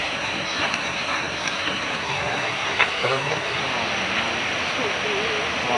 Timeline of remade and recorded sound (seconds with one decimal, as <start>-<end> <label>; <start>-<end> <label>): 0.0-3.6 remade; 3.6-5.8 recorded

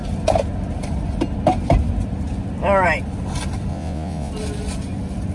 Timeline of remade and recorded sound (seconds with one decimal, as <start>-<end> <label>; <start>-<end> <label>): 0.0-3.7 recorded; 3.7-4.3 remade; 4.3-5.3 recorded

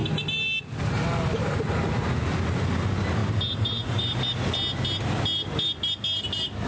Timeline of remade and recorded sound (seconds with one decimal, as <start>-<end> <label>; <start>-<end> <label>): 0.0-3.2 recorded; 3.2-4.2 remade; 4.2-6.7 recorded

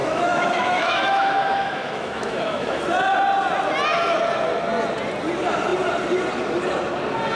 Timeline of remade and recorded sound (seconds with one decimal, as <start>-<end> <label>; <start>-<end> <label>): 0.0-2.8 remade; 2.8-7.4 recorded

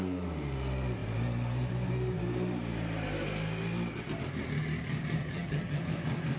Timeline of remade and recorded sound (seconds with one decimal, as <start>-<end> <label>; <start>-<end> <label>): 0.0-5.2 recorded; 5.2-5.8 remade; 5.8-6.4 recorded

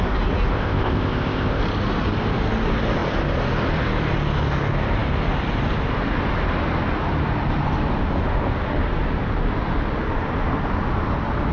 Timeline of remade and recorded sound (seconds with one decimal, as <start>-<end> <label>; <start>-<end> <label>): 0.0-0.5 recorded; 0.5-1.6 remade; 1.6-11.5 recorded

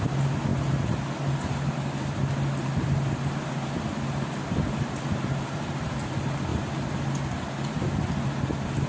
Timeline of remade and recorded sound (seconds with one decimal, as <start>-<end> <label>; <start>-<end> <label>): 0.0-8.9 recorded